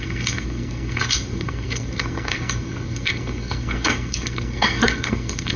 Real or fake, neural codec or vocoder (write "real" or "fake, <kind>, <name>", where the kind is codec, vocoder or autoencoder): fake, codec, SNAC